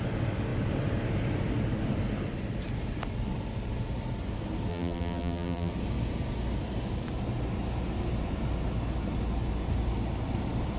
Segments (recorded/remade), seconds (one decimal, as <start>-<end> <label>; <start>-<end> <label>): 0.0-4.7 recorded; 4.7-5.7 remade; 5.7-10.8 recorded